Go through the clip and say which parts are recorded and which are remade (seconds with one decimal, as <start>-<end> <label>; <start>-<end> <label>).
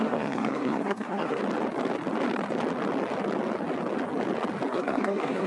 0.0-1.4 remade; 1.4-4.7 recorded; 4.7-5.5 remade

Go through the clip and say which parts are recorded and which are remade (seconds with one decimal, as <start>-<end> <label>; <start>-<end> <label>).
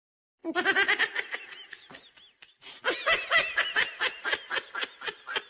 0.0-5.5 recorded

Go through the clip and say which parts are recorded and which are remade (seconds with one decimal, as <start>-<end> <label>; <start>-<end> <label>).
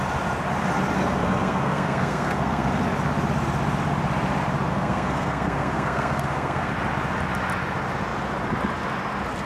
0.0-1.2 recorded; 1.2-2.7 remade; 2.7-4.7 recorded; 4.7-6.7 remade; 6.7-9.5 recorded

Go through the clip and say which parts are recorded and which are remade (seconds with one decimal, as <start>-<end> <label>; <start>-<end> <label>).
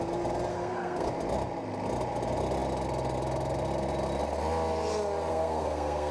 0.0-0.5 recorded; 0.5-1.1 remade; 1.1-5.3 recorded; 5.3-6.1 remade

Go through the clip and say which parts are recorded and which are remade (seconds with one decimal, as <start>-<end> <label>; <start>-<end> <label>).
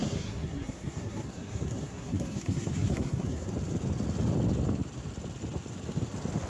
0.0-3.5 remade; 3.5-6.5 recorded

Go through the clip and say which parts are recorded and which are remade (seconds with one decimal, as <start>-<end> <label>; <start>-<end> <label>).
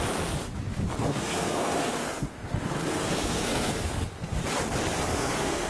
0.0-1.0 recorded; 1.0-4.4 remade; 4.4-5.1 recorded; 5.1-5.7 remade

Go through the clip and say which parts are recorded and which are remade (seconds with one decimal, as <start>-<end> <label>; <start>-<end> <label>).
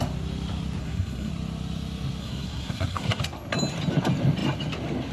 0.0-0.8 recorded; 0.8-1.3 remade; 1.3-2.2 recorded; 2.2-3.2 remade; 3.2-5.1 recorded